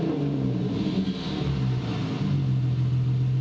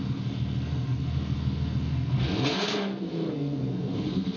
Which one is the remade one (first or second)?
second